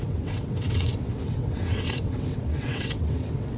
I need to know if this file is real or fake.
fake